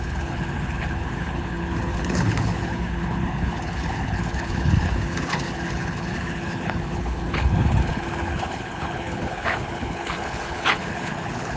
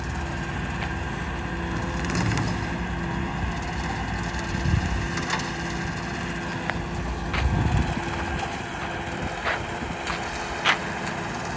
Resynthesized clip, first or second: first